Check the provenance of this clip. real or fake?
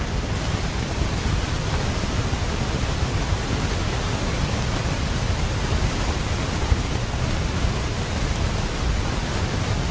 real